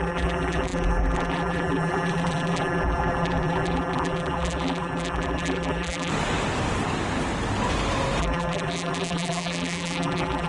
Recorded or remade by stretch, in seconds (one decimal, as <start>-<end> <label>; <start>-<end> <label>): 0.0-6.1 remade; 6.1-8.2 recorded; 8.2-10.5 remade